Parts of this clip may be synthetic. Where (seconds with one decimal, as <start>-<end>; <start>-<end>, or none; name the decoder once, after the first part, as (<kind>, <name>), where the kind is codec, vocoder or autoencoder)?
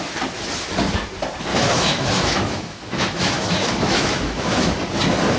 1.5-4.7 (autoencoder, DAC-VAE)